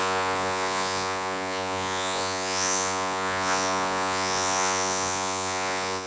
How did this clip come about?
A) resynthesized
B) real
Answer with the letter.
A